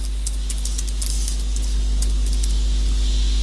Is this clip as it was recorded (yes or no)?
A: yes